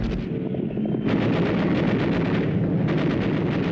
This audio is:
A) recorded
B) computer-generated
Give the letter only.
A